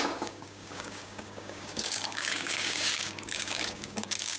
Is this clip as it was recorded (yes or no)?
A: no